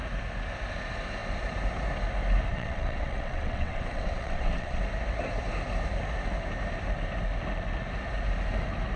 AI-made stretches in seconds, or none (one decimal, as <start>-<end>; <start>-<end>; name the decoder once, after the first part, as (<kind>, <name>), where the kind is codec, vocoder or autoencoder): 2.5-4.8 (vocoder, WaveNeXt)